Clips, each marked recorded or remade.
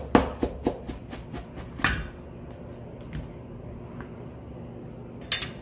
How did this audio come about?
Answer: recorded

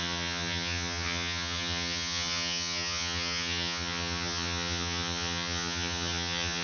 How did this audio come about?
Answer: remade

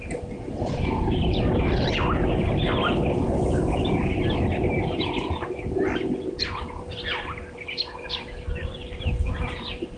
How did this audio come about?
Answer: recorded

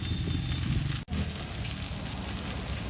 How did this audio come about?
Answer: recorded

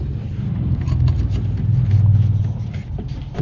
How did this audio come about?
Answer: recorded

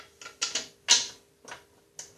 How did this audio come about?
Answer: recorded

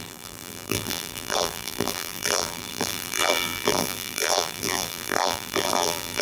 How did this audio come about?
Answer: remade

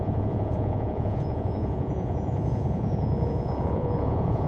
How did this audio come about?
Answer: remade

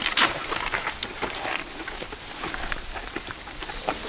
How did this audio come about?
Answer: remade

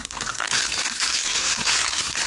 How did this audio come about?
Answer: remade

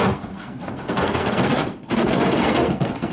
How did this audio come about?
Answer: remade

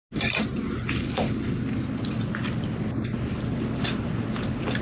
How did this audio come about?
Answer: recorded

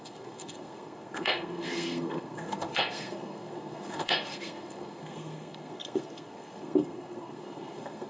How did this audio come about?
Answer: remade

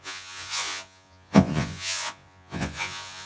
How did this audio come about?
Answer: remade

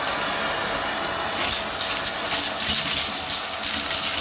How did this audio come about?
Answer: recorded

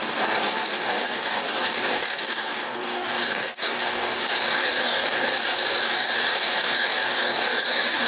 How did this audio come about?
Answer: remade